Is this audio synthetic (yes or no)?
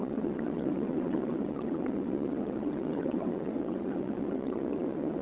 yes